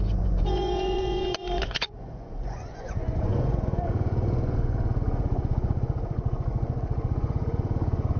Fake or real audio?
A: fake